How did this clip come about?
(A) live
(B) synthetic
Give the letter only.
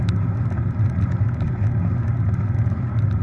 A